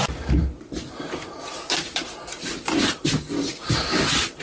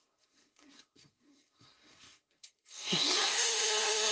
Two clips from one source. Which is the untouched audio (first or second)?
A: first